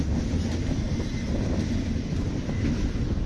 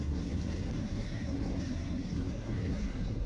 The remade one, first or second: second